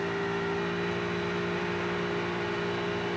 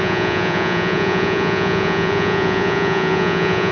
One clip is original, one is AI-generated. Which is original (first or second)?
first